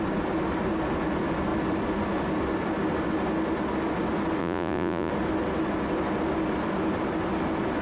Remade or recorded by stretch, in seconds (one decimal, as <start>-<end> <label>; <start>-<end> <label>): 0.0-4.4 recorded; 4.4-5.1 remade; 5.1-7.8 recorded